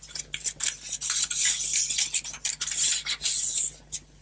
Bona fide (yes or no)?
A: yes